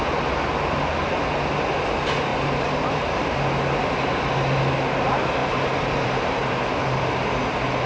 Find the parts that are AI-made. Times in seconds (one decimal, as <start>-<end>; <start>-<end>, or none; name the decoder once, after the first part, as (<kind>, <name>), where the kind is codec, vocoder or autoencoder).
2.3-3.3 (vocoder, BigVGAN v2); 5.4-7.0